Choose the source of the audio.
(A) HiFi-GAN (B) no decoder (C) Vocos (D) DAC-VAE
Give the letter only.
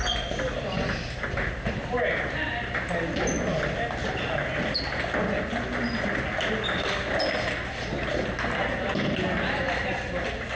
B